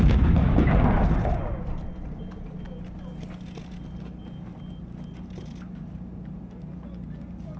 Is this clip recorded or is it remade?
recorded